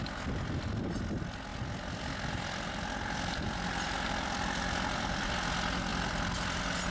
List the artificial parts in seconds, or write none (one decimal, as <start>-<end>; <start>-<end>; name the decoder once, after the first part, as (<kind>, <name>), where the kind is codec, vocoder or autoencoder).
1.5-5.3 (vocoder, BigVGAN v2); 5.9-6.9